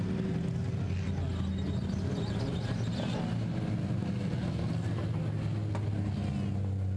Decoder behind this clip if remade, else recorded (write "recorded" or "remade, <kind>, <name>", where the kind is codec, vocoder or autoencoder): recorded